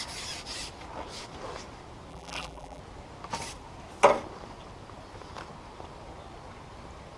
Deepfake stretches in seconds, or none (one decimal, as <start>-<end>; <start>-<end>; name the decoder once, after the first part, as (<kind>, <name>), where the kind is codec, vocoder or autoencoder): 2.1-2.8 (vocoder, BigVGAN v2)